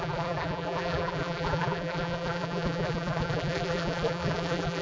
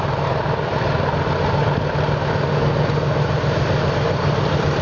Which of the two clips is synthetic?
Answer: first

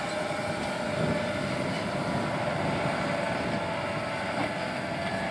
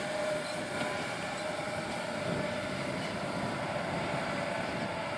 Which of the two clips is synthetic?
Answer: second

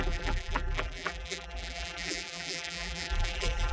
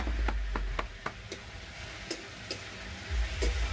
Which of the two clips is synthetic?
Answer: first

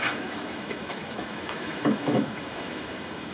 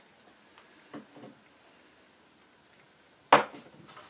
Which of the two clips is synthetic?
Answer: first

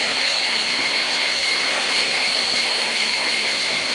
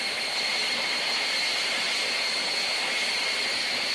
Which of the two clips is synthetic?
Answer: first